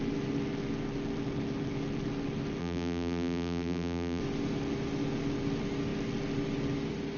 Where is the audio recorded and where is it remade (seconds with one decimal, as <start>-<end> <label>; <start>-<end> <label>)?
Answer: 0.0-2.6 recorded; 2.6-4.2 remade; 4.2-7.2 recorded